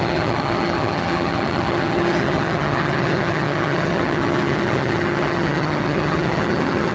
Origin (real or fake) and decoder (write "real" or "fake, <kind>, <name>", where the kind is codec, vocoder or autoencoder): fake, vocoder, HiFi-GAN